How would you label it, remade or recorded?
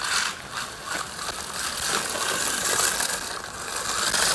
recorded